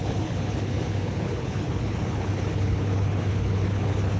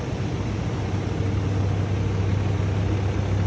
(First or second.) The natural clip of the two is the second